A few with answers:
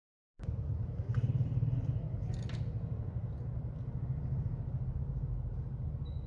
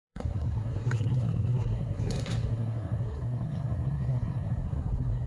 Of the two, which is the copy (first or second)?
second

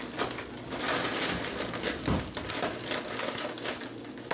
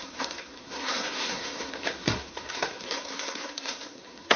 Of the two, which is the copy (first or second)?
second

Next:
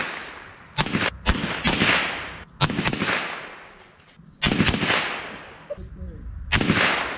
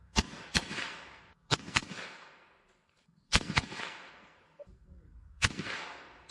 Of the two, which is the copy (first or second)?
second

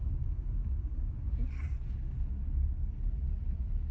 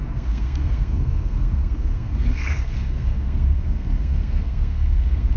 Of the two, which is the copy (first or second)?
second